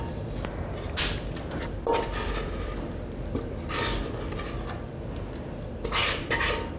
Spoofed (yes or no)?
no